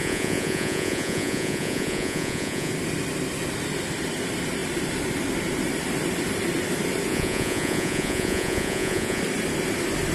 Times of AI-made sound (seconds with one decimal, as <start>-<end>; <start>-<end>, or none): 0.0-2.7; 7.1-9.2

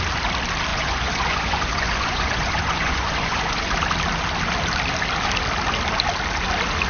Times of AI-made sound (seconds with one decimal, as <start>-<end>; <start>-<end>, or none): 0.7-3.7

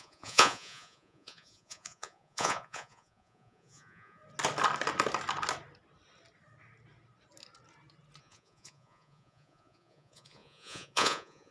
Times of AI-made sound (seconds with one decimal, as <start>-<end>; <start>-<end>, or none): 0.0-4.2; 8.2-11.5

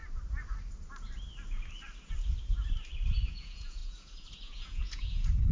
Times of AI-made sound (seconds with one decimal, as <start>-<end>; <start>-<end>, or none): 3.3-5.5

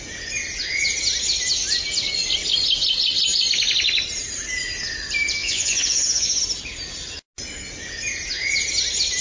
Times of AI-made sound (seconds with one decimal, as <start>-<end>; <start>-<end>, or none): 5.4-6.4